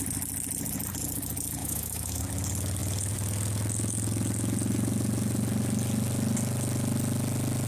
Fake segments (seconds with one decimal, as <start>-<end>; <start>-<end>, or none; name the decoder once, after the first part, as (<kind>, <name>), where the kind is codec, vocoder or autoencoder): 1.6-2.2 (autoencoder, DAC-VAE)